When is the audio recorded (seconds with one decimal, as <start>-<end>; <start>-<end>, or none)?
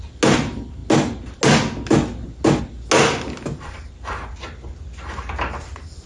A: 0.0-6.1